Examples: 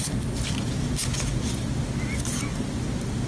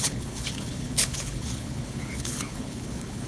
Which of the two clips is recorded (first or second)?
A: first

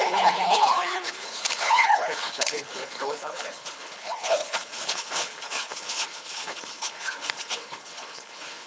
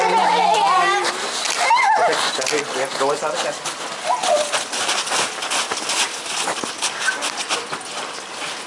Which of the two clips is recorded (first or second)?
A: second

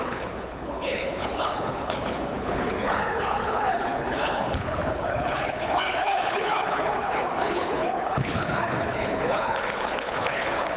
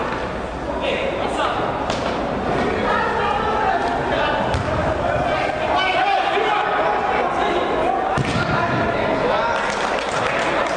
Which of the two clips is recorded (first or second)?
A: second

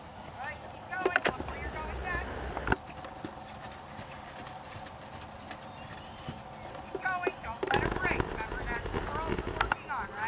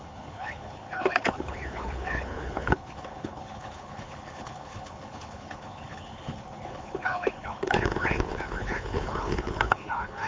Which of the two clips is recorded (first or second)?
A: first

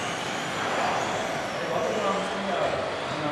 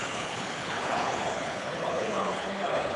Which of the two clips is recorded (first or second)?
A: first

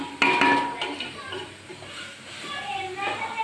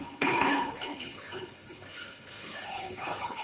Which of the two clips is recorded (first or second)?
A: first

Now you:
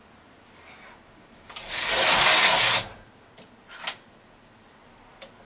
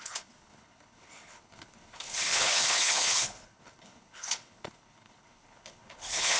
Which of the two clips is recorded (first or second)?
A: first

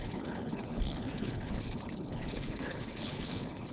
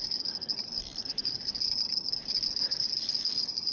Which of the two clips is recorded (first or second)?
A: second